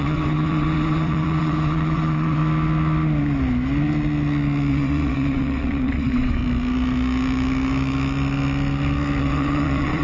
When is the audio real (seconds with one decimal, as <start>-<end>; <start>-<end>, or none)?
2.4-4.7; 6.4-9.2